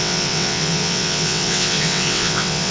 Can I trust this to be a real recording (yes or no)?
no